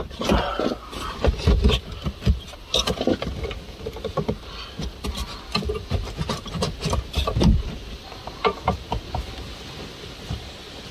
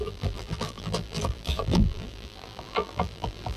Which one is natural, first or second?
first